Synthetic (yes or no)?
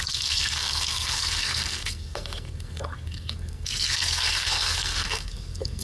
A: yes